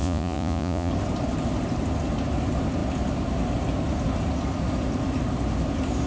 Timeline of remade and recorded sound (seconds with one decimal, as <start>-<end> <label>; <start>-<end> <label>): 0.0-0.9 remade; 0.9-6.1 recorded